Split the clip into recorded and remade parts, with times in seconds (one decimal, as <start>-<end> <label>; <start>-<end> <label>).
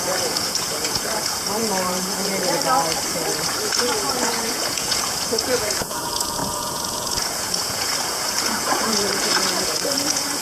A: 0.0-2.3 remade; 2.3-3.4 recorded; 3.4-10.4 remade